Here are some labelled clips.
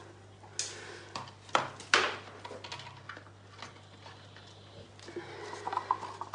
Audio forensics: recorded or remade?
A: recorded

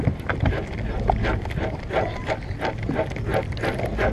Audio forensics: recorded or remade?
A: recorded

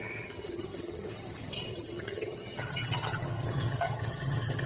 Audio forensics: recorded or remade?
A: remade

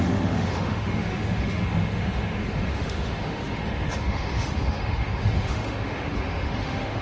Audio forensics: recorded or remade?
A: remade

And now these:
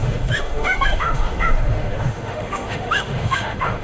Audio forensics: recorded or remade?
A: remade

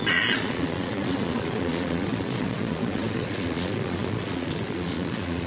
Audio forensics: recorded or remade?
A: remade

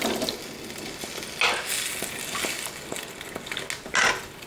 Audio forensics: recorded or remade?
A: recorded